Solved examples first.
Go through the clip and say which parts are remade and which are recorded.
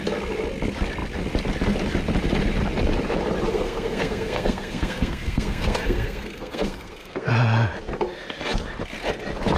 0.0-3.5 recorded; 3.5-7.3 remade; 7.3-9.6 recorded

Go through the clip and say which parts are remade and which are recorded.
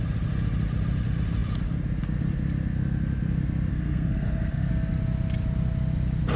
0.0-3.7 recorded; 3.7-4.7 remade; 4.7-6.4 recorded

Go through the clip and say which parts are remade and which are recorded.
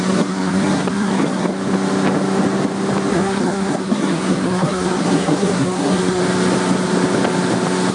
0.0-1.5 remade; 1.5-3.1 recorded; 3.1-6.2 remade; 6.2-7.9 recorded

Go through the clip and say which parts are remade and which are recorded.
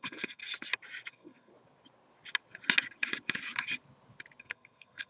0.0-0.4 remade; 0.4-1.1 recorded; 1.1-1.5 remade; 1.5-4.4 recorded; 4.4-5.1 remade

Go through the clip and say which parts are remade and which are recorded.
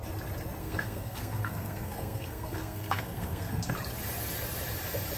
0.0-0.6 recorded; 0.6-3.7 remade; 3.7-5.2 recorded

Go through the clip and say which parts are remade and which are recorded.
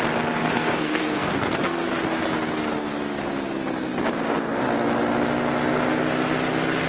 0.0-0.4 recorded; 0.4-1.9 remade; 1.9-6.9 recorded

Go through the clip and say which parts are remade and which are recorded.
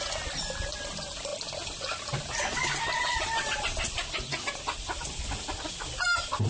0.0-6.5 recorded